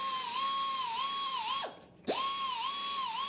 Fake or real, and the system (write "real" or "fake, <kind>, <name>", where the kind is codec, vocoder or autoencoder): real